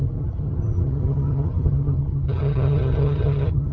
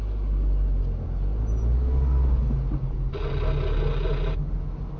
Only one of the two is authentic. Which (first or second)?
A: second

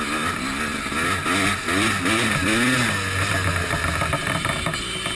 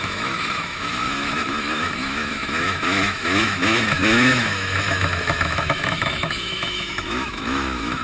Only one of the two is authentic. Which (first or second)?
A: first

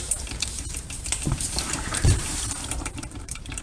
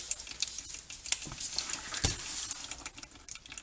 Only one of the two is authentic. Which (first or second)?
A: second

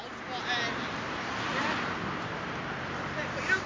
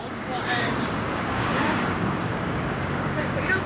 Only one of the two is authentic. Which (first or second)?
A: first